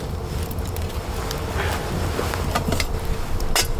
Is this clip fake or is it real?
real